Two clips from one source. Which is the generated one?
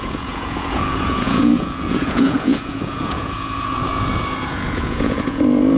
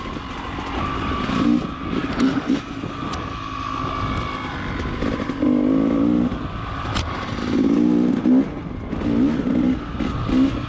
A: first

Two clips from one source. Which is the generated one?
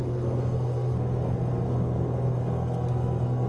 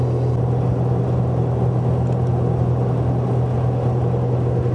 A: first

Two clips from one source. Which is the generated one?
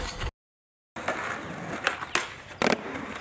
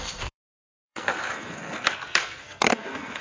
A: second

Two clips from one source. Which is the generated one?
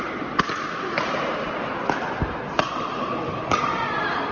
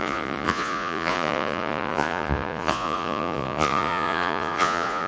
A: second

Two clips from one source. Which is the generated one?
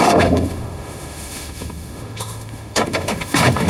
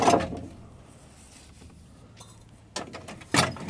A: first